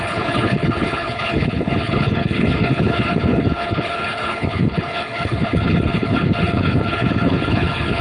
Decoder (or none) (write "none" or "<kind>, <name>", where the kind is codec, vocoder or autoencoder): codec, HILCodec